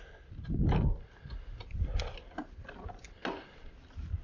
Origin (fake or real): real